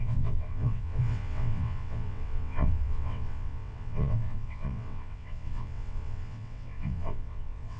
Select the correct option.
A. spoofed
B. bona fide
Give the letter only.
A